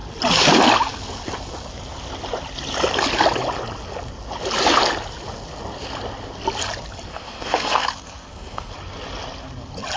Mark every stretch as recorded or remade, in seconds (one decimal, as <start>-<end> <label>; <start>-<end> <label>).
0.0-7.1 recorded; 7.1-8.7 remade; 8.7-10.0 recorded

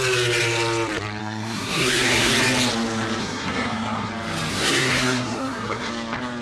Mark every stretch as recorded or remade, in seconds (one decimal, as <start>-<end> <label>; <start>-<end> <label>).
0.0-1.2 recorded; 1.2-2.3 remade; 2.3-3.2 recorded; 3.2-4.1 remade; 4.1-4.5 recorded; 4.5-5.9 remade; 5.9-6.4 recorded

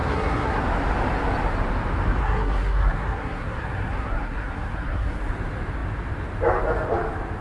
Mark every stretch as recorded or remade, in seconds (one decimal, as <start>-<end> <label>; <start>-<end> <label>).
0.0-0.6 remade; 0.6-2.2 recorded; 2.2-5.2 remade; 5.2-7.4 recorded